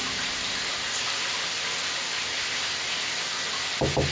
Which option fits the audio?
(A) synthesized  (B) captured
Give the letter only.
B